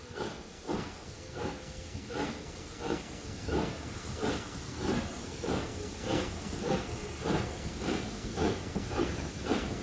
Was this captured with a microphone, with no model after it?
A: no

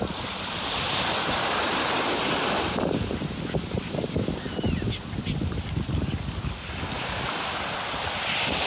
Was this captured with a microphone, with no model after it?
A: no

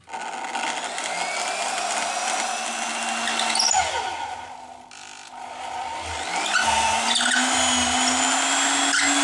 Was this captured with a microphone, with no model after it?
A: yes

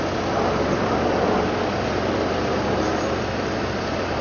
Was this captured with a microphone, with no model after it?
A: yes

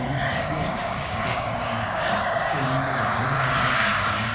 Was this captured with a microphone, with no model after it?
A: no